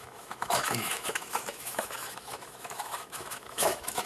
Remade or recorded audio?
remade